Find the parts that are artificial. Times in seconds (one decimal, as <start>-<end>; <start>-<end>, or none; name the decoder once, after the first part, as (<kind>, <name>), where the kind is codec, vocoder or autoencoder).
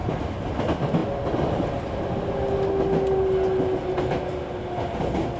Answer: none